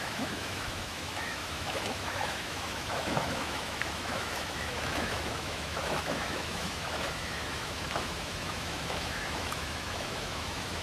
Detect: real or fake fake